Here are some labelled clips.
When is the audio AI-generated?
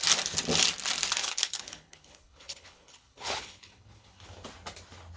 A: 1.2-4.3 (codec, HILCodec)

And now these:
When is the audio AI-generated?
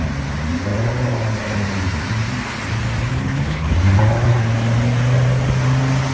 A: 3.1-3.7 (codec, HILCodec)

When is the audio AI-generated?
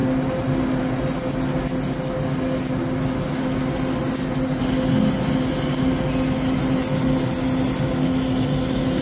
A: none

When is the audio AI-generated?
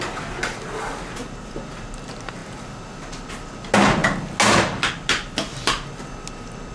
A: none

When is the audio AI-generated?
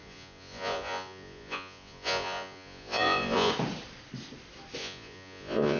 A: 0.0-3.5 (vocoder, Vocos); 4.8-5.8